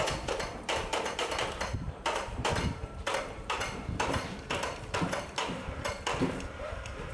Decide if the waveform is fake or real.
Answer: fake